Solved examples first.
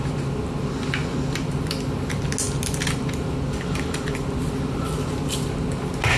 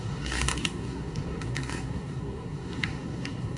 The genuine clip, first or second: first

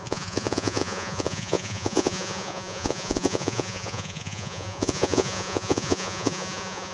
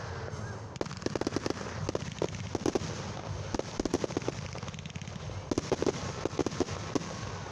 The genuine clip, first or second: second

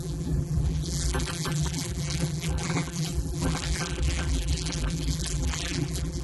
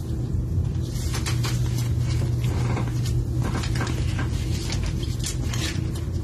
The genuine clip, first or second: second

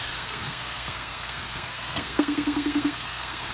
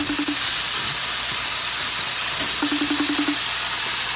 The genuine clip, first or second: second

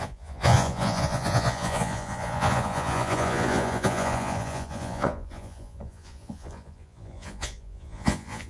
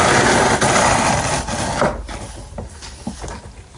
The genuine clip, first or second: second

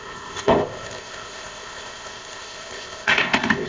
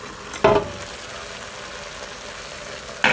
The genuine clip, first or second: second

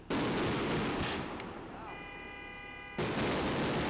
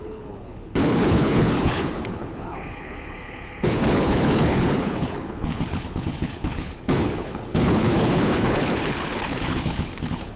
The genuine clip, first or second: first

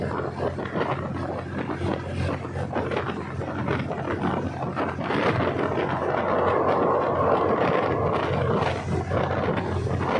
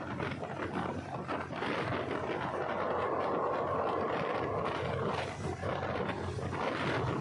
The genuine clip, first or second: first